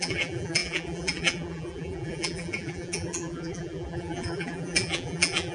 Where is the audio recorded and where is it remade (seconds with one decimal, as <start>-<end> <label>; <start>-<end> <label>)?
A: 0.0-5.5 remade